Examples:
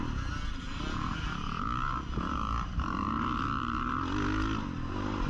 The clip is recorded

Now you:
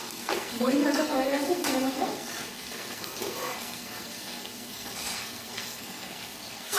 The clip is remade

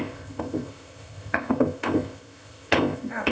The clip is remade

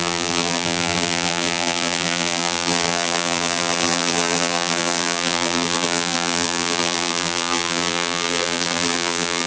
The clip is remade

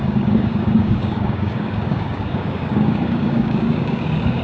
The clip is remade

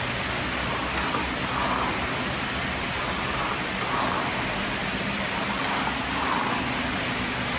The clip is recorded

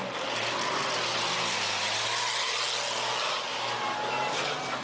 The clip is recorded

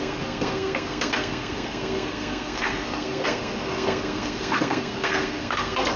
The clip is remade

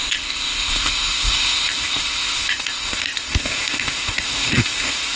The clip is remade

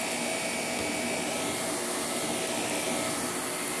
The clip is recorded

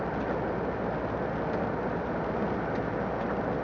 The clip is recorded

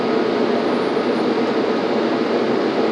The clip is recorded